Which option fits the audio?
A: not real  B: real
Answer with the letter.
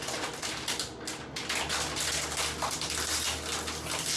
B